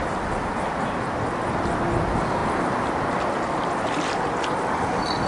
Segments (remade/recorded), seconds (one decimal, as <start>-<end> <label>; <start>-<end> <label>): 0.0-5.3 recorded